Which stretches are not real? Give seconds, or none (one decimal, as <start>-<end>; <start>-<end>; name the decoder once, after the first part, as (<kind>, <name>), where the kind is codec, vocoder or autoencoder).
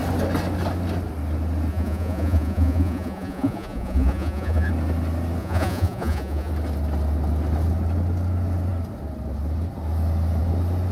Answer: 1.7-4.7 (vocoder, Vocos); 5.4-6.5